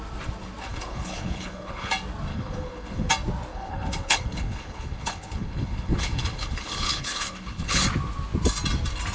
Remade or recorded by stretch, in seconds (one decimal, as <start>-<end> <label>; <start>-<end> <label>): 0.0-0.7 recorded; 0.7-1.9 remade; 1.9-2.3 recorded; 2.3-3.1 remade; 3.1-3.5 recorded; 3.5-7.8 remade; 7.8-9.1 recorded